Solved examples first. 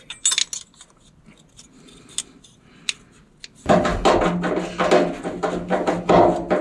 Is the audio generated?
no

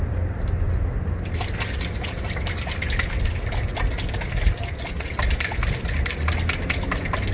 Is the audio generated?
no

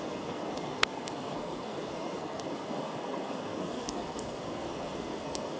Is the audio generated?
yes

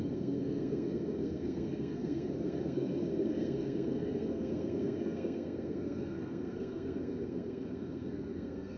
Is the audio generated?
yes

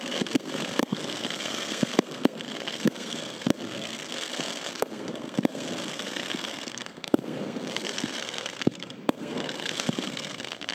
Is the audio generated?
yes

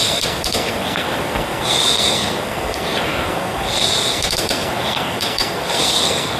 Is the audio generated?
yes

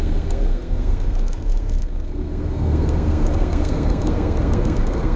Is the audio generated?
yes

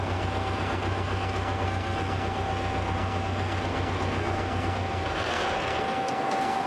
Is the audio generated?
yes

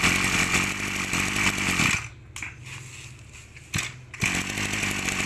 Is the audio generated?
no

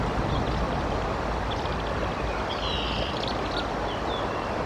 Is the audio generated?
no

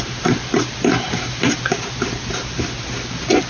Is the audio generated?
no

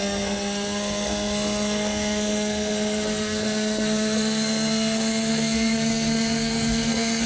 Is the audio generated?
yes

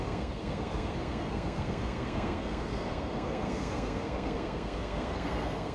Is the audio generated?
yes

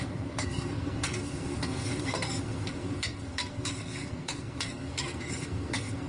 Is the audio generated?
yes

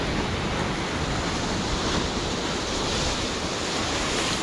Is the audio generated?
no